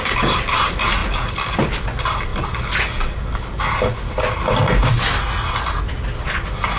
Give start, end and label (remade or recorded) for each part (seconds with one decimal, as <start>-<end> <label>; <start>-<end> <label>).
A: 0.0-6.8 recorded